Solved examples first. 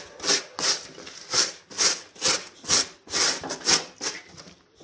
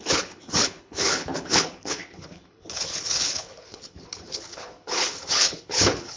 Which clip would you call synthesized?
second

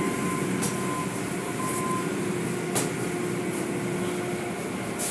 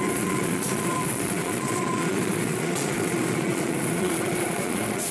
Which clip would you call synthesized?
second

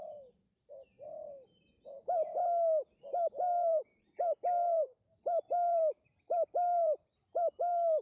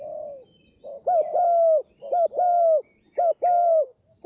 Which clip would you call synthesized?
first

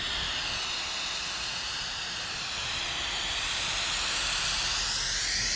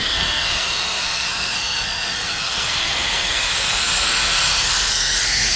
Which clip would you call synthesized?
second